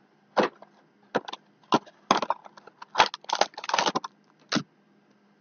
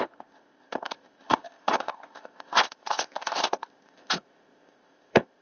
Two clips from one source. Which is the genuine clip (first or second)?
first